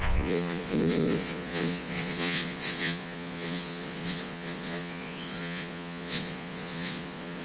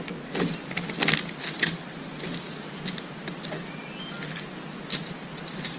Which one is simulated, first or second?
first